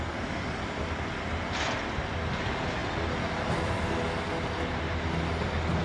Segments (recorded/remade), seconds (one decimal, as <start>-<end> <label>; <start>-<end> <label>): 0.0-5.8 recorded